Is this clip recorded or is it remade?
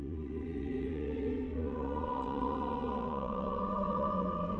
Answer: remade